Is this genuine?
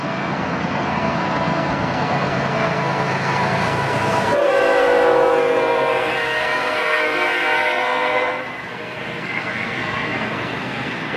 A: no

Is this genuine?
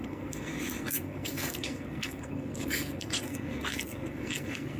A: no